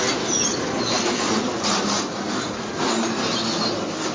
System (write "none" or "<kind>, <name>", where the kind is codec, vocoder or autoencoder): none